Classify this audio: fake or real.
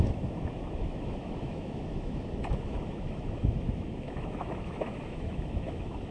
fake